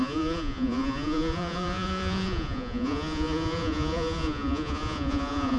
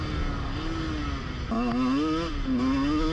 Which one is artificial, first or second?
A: first